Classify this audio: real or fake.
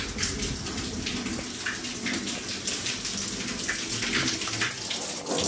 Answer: real